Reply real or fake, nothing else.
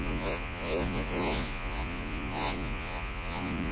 fake